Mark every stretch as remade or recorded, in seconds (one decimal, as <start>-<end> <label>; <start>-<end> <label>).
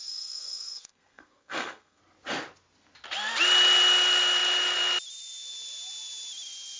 0.0-2.0 remade; 2.0-6.8 recorded